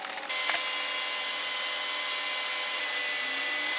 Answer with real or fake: real